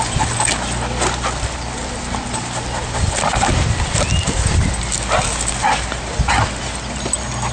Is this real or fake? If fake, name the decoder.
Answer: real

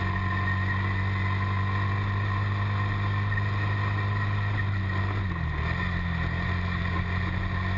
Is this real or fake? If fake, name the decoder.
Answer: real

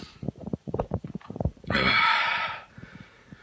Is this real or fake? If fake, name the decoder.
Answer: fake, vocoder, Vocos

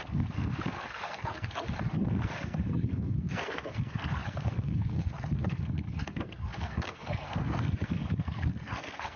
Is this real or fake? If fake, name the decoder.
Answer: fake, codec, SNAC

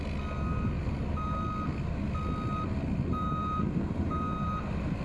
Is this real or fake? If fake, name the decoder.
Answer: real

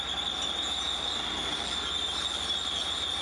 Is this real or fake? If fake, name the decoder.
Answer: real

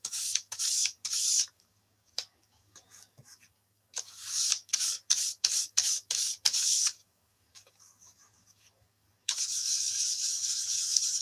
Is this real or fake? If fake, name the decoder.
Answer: fake, codec, DAC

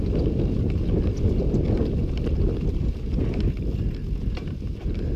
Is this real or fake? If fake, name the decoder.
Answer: real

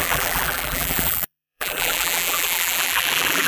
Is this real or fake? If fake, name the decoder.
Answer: fake, vocoder, BigVGAN v2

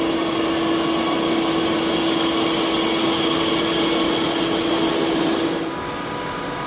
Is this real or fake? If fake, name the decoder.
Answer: real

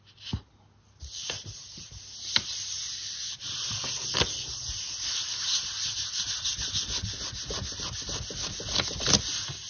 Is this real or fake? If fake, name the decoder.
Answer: real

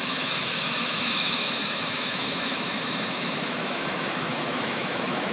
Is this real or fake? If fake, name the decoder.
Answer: fake, autoencoder, DAC-VAE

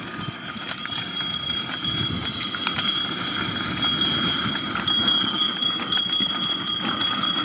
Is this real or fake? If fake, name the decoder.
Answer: real